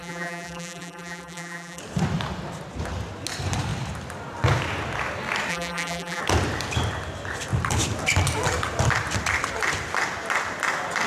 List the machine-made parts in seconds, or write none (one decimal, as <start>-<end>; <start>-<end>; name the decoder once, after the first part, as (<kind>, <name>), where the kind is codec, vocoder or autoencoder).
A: 0.0-1.8 (vocoder, BigVGAN v2); 5.5-6.2